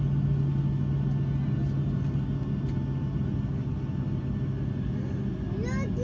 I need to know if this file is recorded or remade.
recorded